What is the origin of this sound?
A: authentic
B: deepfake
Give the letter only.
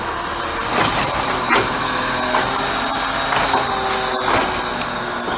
A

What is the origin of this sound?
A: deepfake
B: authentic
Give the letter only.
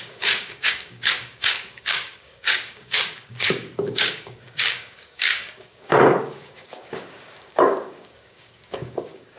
A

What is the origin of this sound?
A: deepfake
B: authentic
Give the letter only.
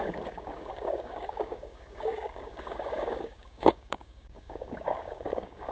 A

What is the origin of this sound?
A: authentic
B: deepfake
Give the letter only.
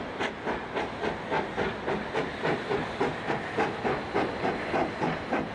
A